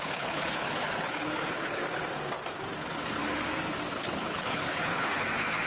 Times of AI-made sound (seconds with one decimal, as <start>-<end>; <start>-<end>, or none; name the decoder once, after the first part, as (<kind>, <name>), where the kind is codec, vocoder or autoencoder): 0.0-1.8 (codec, HILCodec); 3.9-5.7